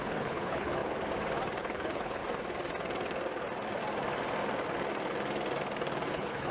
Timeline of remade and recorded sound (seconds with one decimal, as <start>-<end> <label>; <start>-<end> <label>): 0.0-0.8 remade; 0.8-1.6 recorded; 1.6-2.2 remade; 2.2-6.1 recorded; 6.1-6.5 remade

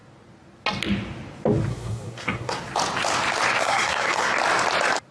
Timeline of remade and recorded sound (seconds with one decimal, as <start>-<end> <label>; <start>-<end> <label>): 0.0-1.7 recorded; 1.7-2.6 remade; 2.6-3.6 recorded; 3.6-4.3 remade; 4.3-5.1 recorded

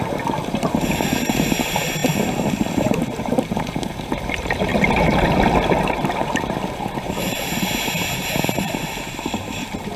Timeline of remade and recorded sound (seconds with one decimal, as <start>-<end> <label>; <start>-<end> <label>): 0.0-4.7 remade; 4.7-5.7 recorded; 5.7-10.0 remade